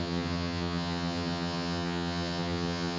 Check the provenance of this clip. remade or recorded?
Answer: remade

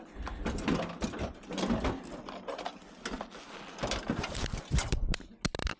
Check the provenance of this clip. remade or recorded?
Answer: recorded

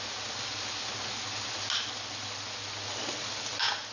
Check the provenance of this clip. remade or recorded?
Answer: recorded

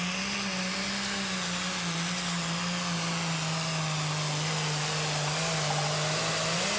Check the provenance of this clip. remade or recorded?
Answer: recorded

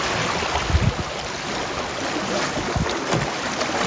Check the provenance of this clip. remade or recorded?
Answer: recorded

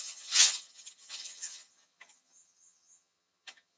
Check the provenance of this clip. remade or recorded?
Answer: remade